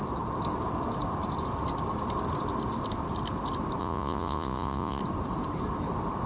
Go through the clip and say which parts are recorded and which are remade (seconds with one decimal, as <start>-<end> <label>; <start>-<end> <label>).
0.0-3.8 recorded; 3.8-5.0 remade; 5.0-6.3 recorded